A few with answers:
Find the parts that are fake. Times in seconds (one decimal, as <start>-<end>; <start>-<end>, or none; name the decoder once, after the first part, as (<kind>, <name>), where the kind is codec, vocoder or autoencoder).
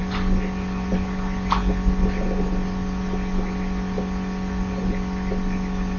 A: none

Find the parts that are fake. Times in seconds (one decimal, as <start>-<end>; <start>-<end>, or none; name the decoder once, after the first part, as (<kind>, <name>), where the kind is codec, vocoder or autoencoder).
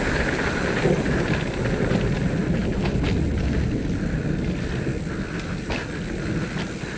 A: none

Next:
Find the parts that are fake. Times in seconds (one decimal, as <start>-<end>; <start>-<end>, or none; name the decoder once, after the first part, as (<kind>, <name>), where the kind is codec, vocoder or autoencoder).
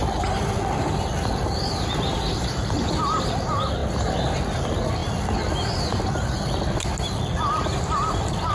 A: none